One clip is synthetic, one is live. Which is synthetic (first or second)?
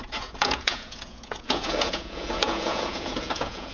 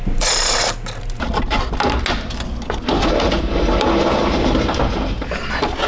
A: first